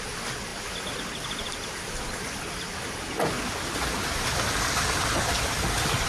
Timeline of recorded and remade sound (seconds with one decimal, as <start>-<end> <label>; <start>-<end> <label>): 0.0-6.1 recorded